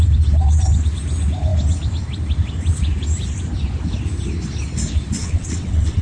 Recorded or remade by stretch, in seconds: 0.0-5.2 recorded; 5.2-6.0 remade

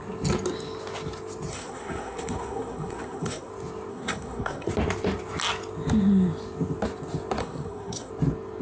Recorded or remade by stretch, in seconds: 0.0-1.5 recorded; 1.5-3.5 remade; 3.5-3.9 recorded; 3.9-4.7 remade; 4.7-7.4 recorded; 7.4-8.1 remade; 8.1-8.6 recorded

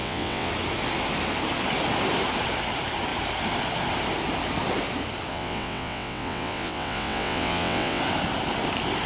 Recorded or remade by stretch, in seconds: 0.0-0.5 remade; 0.5-5.3 recorded; 5.3-8.0 remade; 8.0-9.1 recorded